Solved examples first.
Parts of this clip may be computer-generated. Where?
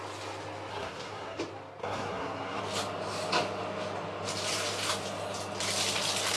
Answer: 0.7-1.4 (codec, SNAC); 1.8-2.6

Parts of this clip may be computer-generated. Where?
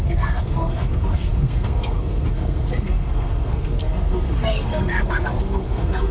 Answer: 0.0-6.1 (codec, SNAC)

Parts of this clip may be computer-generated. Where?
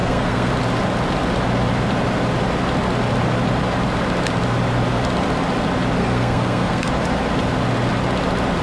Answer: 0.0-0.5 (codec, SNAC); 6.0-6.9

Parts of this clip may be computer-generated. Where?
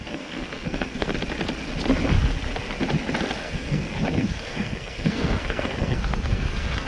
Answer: 0.0-1.1 (codec, SNAC); 3.4-6.9